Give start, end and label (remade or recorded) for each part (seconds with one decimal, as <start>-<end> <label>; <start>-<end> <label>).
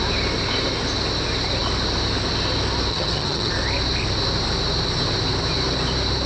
0.0-2.9 recorded; 2.9-3.5 remade; 3.5-6.3 recorded